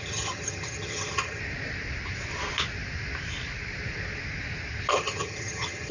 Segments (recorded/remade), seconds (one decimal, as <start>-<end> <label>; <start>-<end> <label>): 0.0-1.4 remade; 1.4-4.9 recorded; 4.9-5.9 remade